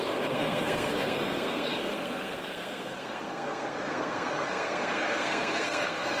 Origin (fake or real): fake